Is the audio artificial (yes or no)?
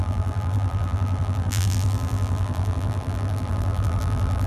yes